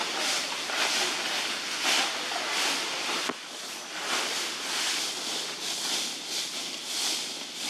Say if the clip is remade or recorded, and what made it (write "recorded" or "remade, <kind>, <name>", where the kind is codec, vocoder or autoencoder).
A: recorded